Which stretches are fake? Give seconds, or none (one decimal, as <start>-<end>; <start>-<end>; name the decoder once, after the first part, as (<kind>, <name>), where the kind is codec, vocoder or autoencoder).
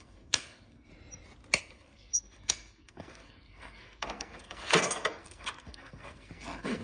0.0-0.9 (codec, SNAC); 1.6-6.8